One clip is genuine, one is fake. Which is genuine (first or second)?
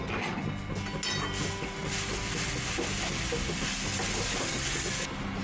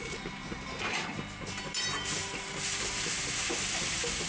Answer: first